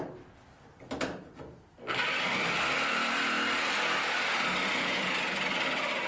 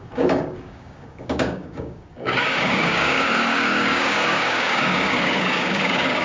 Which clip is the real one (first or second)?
first